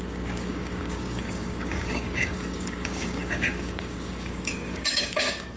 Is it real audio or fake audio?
fake